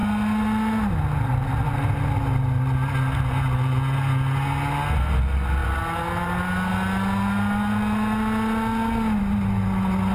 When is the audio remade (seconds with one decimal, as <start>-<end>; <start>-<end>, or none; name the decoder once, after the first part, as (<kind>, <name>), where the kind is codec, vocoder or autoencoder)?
none